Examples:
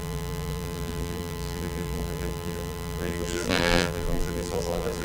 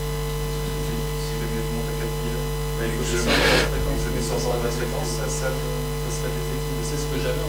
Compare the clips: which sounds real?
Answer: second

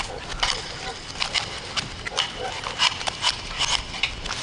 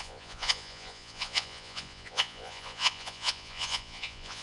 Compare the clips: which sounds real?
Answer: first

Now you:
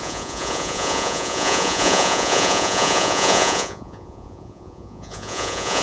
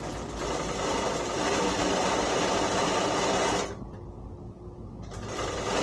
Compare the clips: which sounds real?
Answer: second